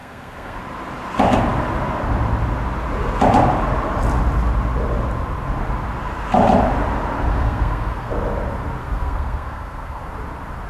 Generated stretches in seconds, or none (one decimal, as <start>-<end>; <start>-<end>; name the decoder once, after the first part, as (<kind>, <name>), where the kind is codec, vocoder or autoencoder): 0.0-0.6 (codec, SNAC); 7.3-8.1; 8.8-10.1